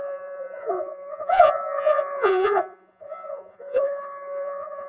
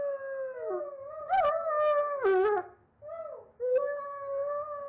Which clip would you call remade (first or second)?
first